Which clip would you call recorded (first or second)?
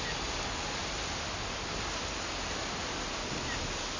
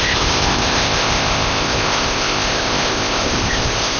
first